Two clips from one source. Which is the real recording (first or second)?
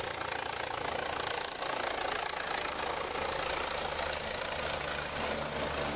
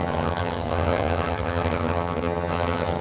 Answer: first